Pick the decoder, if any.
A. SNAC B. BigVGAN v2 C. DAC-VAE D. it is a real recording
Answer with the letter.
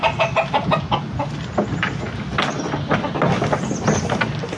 D